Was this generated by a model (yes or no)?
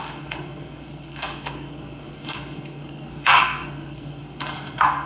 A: yes